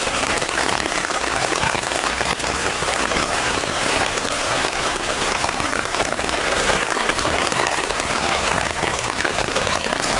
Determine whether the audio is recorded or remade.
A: remade